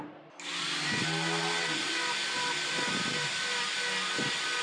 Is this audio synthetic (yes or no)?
no